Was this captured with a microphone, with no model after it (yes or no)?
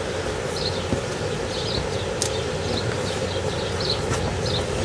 yes